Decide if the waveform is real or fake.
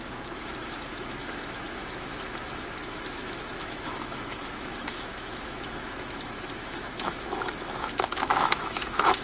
fake